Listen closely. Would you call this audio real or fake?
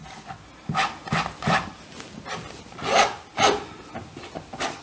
real